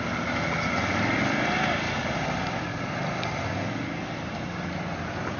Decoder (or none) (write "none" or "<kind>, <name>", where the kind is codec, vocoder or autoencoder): none